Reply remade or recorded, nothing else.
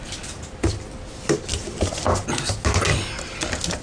recorded